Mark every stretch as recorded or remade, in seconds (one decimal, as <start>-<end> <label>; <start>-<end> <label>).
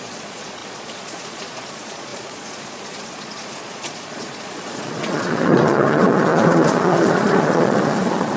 0.0-8.4 remade